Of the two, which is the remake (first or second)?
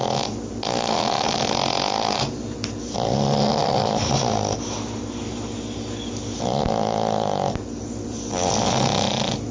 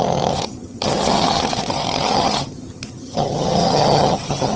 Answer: second